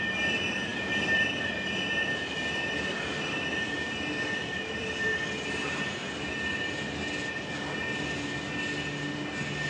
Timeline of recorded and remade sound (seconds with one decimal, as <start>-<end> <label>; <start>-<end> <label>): 0.0-0.7 recorded; 0.7-1.3 remade; 1.3-4.4 recorded; 4.4-5.6 remade; 5.6-9.7 recorded